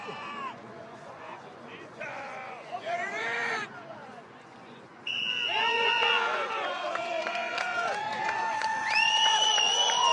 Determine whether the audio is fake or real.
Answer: fake